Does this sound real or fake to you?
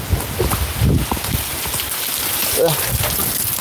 real